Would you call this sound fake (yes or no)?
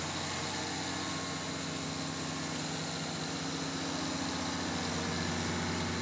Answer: no